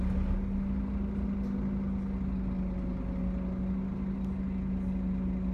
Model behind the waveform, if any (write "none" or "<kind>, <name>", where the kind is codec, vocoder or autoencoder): none